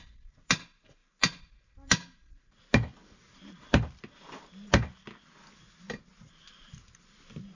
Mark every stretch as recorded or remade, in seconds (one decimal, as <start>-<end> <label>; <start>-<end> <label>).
0.0-7.6 recorded